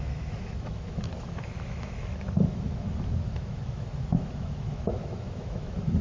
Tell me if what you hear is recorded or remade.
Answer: remade